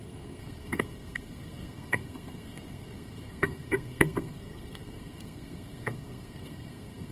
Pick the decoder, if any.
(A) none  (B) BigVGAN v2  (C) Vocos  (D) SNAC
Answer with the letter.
D